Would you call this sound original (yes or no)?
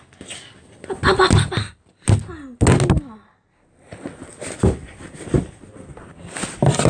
yes